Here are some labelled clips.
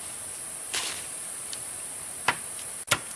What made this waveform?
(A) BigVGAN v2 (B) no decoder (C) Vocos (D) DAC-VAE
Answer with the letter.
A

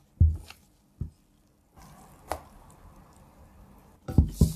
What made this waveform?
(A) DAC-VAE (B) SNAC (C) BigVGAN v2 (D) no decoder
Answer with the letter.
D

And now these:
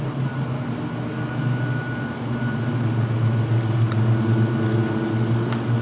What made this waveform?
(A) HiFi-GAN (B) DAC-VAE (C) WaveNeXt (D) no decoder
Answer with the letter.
D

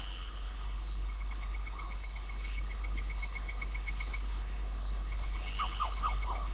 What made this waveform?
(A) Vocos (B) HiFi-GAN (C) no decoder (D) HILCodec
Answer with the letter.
D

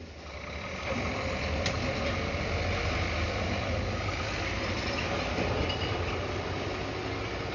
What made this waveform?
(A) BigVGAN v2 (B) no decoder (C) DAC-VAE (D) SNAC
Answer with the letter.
B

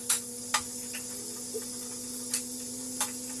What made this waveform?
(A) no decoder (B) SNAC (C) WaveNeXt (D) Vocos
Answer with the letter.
A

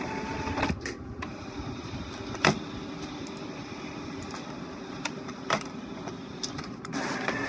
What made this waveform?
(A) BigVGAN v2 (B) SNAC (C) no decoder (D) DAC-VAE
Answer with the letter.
A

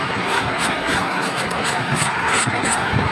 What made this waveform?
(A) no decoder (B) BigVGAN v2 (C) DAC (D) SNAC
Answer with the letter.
D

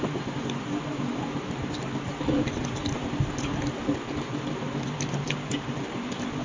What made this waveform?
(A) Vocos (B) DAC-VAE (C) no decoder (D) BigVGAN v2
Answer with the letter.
D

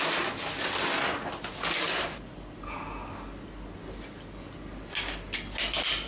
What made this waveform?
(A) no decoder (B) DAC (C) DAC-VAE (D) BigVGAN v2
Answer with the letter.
A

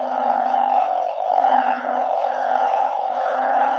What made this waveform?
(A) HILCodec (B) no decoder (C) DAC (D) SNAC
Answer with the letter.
A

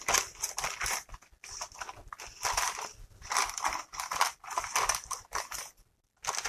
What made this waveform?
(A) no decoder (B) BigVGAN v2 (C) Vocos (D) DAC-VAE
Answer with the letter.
A